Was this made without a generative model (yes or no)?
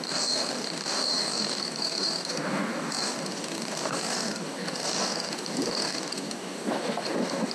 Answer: no